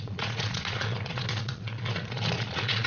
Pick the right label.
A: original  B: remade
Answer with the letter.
B